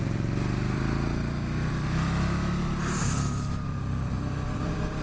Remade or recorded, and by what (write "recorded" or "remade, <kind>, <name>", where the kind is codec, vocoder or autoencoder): remade, vocoder, BigVGAN v2